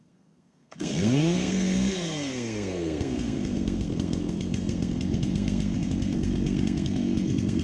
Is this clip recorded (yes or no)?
no